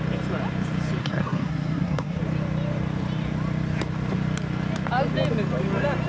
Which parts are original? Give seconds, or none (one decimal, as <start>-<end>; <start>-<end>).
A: 0.0-1.0; 2.2-6.1